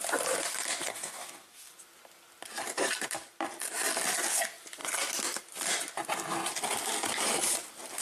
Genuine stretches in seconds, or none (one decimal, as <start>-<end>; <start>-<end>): 0.0-0.9; 1.7-8.0